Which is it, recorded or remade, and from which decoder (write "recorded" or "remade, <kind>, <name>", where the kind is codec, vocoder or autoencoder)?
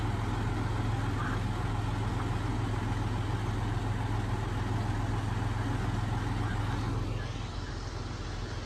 recorded